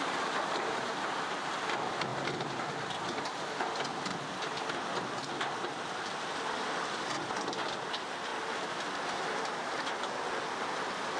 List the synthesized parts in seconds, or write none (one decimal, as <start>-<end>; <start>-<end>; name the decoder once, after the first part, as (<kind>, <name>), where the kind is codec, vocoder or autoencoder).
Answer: none